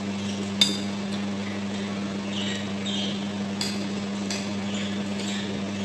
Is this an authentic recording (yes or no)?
yes